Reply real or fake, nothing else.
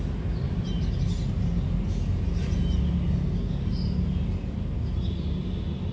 real